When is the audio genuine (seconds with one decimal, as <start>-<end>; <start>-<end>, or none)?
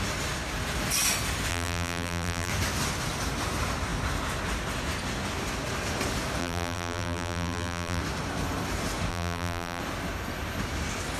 0.0-1.5; 2.5-6.4; 8.0-9.1; 9.8-11.2